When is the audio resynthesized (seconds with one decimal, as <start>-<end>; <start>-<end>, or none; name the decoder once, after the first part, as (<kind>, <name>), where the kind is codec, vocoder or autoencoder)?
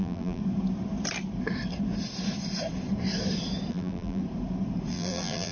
0.0-0.4 (vocoder, BigVGAN v2); 3.7-4.2; 4.9-5.5